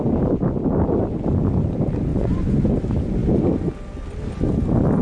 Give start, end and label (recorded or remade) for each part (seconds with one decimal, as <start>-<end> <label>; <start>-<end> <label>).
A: 0.0-2.1 recorded; 2.1-2.6 remade; 2.6-5.0 recorded